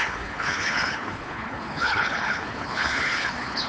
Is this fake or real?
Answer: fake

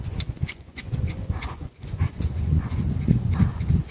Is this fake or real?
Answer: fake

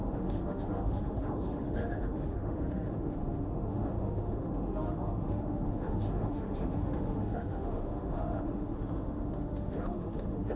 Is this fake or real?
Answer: fake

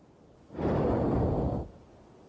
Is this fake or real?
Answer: real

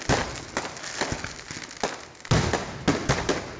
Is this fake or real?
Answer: real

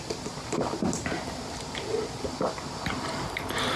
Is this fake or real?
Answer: real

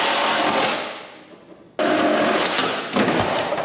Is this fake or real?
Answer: real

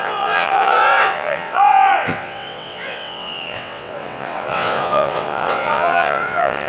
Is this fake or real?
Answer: fake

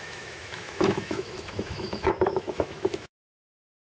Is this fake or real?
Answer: fake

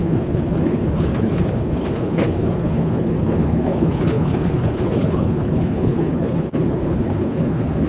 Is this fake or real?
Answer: fake